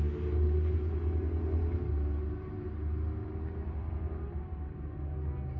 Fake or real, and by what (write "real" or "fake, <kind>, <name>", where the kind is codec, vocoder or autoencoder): real